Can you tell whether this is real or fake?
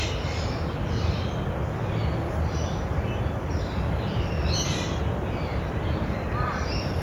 fake